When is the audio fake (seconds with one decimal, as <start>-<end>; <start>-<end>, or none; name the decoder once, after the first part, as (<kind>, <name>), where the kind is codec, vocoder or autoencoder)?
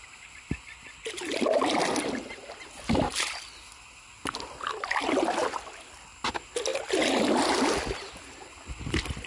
none